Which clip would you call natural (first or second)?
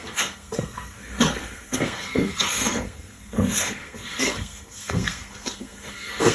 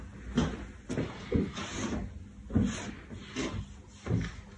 second